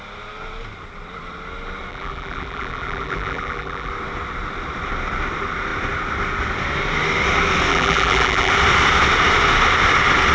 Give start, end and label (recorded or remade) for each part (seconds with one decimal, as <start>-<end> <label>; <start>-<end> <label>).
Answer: 0.0-1.9 recorded; 1.9-3.9 remade; 3.9-7.7 recorded; 7.7-8.5 remade; 8.5-10.3 recorded